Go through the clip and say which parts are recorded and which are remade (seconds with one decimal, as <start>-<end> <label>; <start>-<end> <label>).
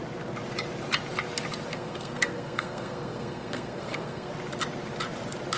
0.0-1.7 recorded; 1.7-4.3 remade; 4.3-5.6 recorded